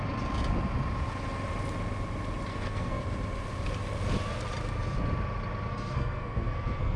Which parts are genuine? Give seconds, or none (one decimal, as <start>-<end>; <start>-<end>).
0.0-2.5; 3.0-5.7